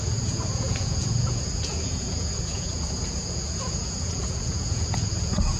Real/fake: fake